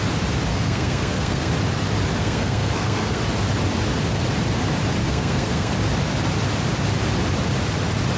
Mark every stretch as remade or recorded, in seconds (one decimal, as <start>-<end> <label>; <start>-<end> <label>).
0.0-0.5 recorded; 0.5-1.5 remade; 1.5-2.2 recorded; 2.2-3.2 remade; 3.2-5.0 recorded; 5.0-5.7 remade; 5.7-8.2 recorded